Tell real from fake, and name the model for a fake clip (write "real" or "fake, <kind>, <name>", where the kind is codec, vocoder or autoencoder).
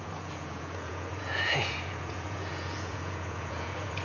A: fake, vocoder, Vocos